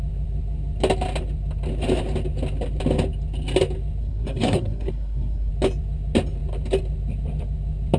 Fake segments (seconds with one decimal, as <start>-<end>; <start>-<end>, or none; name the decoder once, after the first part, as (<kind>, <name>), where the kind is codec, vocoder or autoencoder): 4.0-5.5 (codec, SNAC)